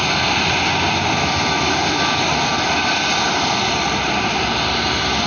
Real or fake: real